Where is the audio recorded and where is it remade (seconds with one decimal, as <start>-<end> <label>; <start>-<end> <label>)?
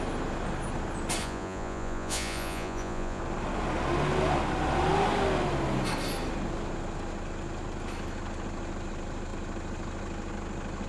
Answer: 0.0-1.2 recorded; 1.2-3.2 remade; 3.2-10.9 recorded